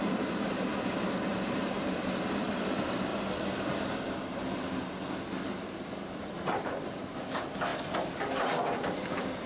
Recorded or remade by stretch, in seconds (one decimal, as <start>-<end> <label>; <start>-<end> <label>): 0.0-3.1 remade; 3.1-5.7 recorded; 5.7-9.5 remade